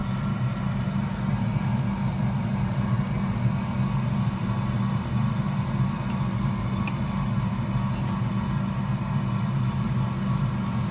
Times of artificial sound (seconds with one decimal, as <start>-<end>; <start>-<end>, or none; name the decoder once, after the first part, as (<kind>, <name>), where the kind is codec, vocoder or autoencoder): none